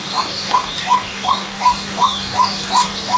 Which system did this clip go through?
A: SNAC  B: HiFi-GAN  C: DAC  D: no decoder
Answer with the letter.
C